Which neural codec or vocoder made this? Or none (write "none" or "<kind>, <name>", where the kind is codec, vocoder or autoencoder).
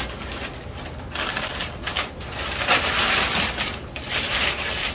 none